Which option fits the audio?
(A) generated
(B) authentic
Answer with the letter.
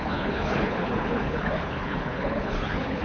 A